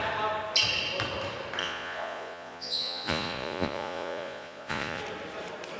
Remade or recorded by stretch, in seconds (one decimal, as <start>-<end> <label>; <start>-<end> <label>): 0.0-1.6 recorded; 1.6-5.0 remade; 5.0-5.8 recorded